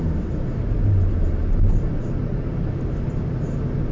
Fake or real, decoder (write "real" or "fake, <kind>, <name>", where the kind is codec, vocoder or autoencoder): real